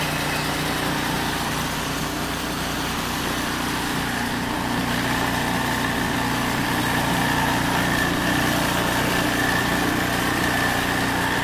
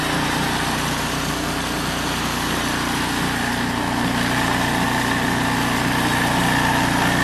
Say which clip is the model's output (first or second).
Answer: first